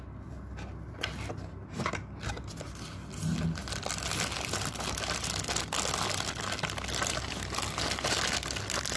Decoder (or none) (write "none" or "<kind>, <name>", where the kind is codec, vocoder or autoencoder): none